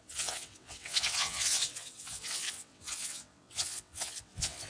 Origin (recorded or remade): remade